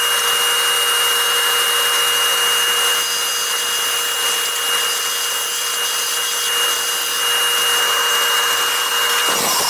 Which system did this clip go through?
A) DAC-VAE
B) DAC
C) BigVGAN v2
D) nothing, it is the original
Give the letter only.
D